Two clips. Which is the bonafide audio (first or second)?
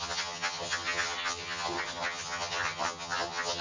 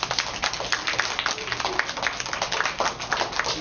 second